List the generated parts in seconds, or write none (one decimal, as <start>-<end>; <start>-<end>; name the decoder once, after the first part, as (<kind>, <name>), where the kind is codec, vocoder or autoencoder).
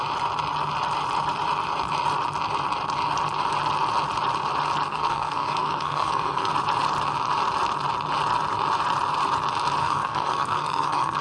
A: 4.9-6.5 (codec, SNAC); 9.8-11.2